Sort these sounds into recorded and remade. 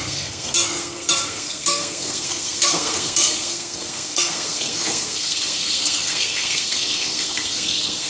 remade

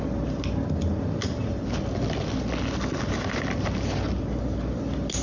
recorded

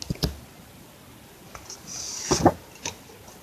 recorded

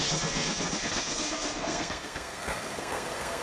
remade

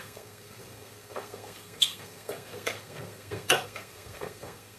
remade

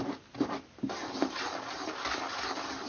recorded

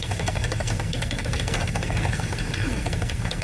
remade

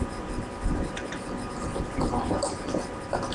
recorded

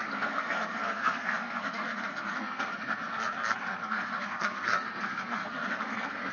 remade